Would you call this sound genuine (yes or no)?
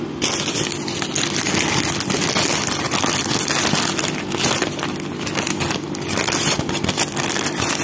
yes